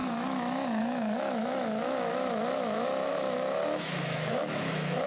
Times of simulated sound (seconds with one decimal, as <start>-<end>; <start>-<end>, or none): 0.0-5.1